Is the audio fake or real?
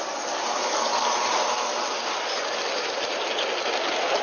real